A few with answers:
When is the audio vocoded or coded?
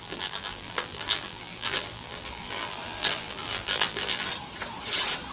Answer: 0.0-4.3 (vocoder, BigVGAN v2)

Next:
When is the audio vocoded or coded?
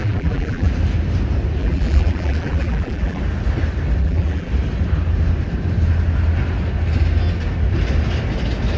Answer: 0.0-0.7 (vocoder, BigVGAN v2); 1.6-3.2; 4.0-4.5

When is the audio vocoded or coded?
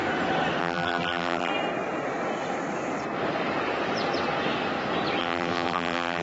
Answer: 0.6-1.5 (vocoder, BigVGAN v2); 5.2-6.2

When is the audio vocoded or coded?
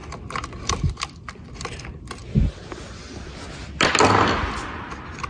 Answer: none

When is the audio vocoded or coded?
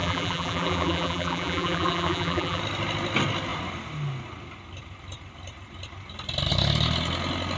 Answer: 0.0-2.6 (vocoder, BigVGAN v2)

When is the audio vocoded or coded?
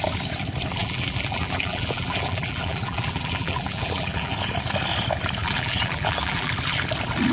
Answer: 0.8-4.3 (vocoder, BigVGAN v2); 5.4-6.5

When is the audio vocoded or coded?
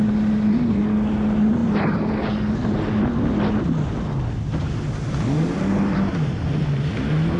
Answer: none